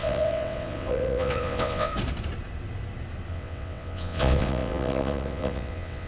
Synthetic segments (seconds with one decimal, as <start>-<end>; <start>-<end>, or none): 0.0-1.9; 3.3-6.1